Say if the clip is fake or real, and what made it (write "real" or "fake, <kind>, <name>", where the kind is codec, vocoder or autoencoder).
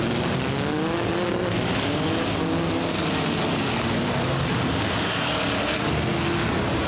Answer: real